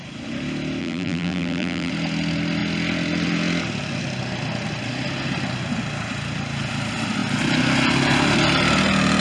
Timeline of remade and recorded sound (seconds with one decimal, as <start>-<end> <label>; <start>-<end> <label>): 0.0-0.8 recorded; 0.8-1.9 remade; 1.9-9.2 recorded

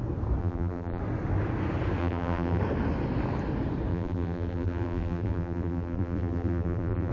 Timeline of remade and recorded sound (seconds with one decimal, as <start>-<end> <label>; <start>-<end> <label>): 0.0-0.4 recorded; 0.4-1.0 remade; 1.0-2.0 recorded; 2.0-2.6 remade; 2.6-3.9 recorded; 3.9-7.1 remade